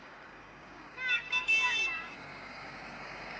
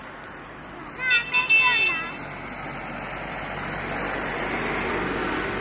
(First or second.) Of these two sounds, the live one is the second